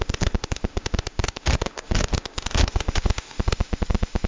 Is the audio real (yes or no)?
no